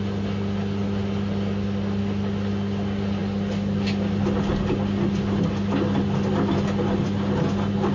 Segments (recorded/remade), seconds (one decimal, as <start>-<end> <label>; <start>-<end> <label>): 0.0-7.9 recorded